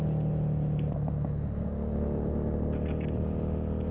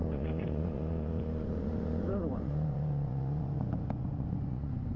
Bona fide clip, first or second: first